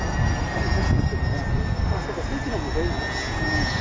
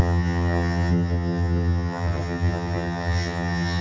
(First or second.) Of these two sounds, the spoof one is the second